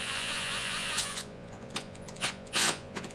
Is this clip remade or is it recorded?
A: remade